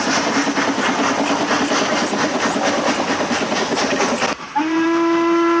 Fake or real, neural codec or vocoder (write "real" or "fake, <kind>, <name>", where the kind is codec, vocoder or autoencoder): real